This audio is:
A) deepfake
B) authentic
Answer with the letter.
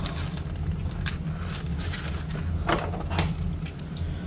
B